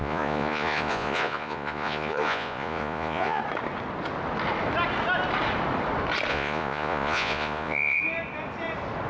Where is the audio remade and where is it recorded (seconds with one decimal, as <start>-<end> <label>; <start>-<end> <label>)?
0.0-3.4 remade; 3.4-6.3 recorded; 6.3-8.0 remade; 8.0-9.1 recorded